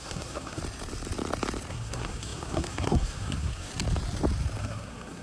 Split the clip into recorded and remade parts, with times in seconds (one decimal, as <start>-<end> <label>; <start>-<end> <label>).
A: 0.0-0.6 remade; 0.6-1.7 recorded; 1.7-3.7 remade; 3.7-4.6 recorded; 4.6-5.2 remade